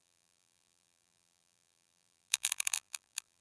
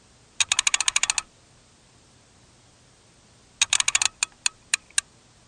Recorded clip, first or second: second